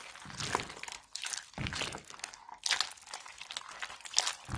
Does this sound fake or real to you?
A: real